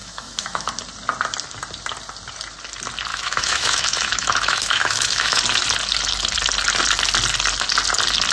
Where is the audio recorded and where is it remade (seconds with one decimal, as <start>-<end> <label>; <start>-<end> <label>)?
0.0-0.7 remade; 0.7-3.1 recorded; 3.1-5.4 remade; 5.4-8.3 recorded